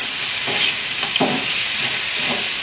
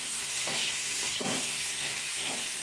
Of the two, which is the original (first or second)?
first